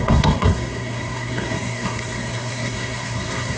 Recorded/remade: remade